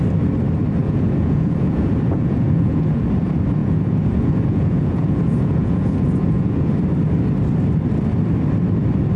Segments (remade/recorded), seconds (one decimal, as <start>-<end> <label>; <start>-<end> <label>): 0.0-0.8 recorded; 0.8-3.0 remade; 3.0-3.6 recorded; 3.6-6.7 remade; 6.7-9.2 recorded